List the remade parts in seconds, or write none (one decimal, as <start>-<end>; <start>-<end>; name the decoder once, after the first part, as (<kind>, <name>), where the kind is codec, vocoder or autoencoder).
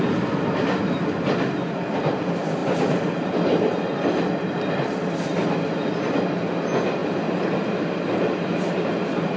none